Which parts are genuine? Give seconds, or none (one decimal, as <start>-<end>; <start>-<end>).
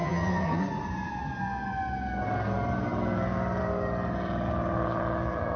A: 0.6-5.6